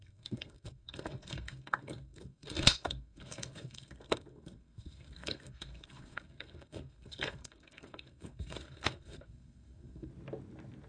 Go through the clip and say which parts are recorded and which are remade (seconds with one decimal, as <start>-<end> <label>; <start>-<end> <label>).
0.0-10.1 remade; 10.1-10.9 recorded